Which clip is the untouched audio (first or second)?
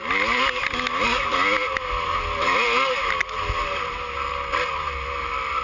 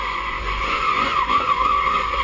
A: first